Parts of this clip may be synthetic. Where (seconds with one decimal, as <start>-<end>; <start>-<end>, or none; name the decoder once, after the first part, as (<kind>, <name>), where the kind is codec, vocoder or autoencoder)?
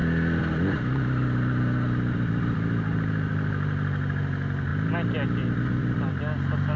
none